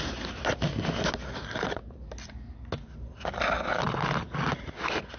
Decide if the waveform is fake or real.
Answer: real